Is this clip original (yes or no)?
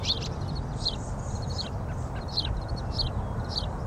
no